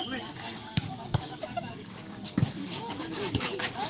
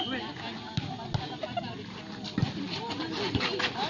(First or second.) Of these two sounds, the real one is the second